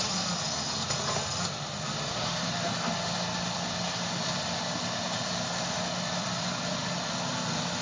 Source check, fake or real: real